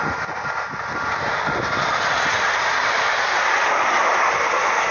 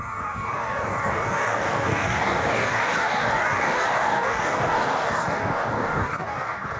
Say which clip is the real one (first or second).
first